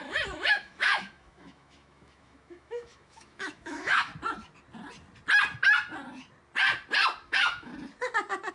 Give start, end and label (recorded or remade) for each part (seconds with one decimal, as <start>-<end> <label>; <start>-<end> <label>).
0.0-4.1 remade; 4.1-7.3 recorded; 7.3-7.7 remade; 7.7-8.5 recorded